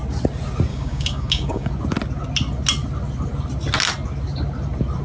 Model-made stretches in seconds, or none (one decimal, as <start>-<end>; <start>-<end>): 0.7-1.7